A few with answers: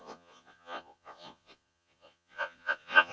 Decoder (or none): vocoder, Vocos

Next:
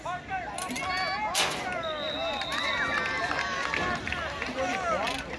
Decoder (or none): none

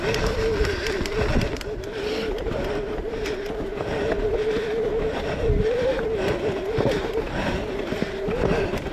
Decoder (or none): none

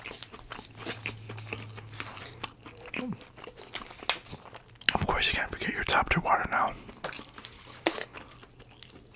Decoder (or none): none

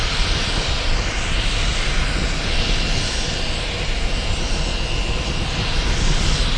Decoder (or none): none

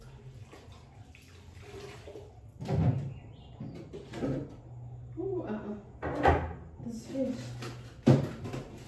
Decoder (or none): none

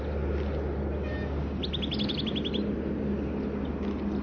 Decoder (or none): none